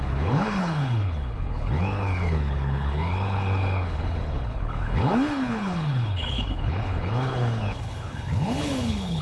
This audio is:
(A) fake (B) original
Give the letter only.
A